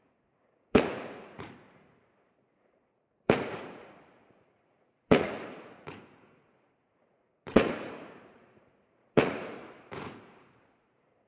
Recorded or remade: remade